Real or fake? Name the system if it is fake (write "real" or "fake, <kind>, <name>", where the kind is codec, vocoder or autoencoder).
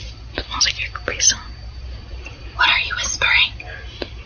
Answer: fake, vocoder, BigVGAN v2